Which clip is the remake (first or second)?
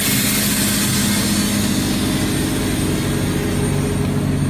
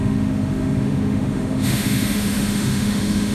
second